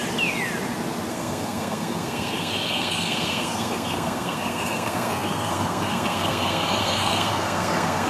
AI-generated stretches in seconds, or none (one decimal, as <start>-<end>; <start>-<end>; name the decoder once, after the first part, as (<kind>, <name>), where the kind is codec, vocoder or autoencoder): 1.1-8.1 (codec, SNAC)